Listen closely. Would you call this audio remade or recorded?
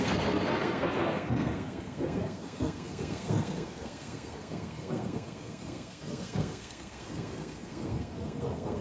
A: remade